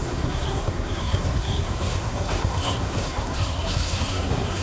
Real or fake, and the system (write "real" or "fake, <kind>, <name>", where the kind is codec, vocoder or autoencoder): fake, codec, SNAC